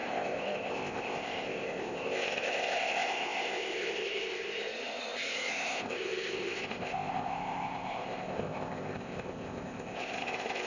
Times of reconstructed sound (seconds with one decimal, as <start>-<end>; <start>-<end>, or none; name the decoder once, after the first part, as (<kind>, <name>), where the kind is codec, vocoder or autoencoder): 0.0-10.7 (codec, ZipCodec)